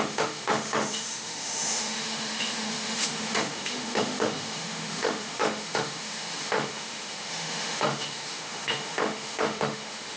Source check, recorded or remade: remade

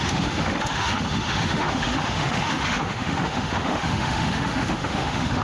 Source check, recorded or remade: remade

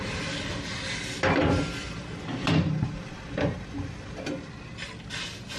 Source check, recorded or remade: recorded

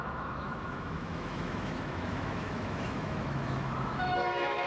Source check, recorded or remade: remade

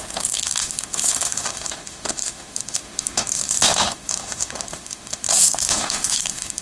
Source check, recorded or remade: remade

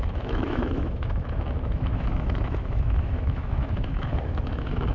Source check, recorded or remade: remade